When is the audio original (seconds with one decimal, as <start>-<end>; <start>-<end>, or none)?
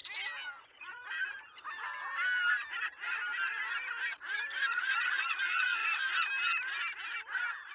0.0-0.6; 1.0-4.7; 5.8-7.7